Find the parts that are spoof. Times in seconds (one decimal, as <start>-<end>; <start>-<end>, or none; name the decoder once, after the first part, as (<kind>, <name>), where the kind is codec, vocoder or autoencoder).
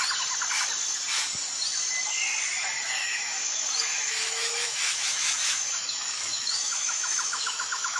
3.0-8.0 (autoencoder, DAC-VAE)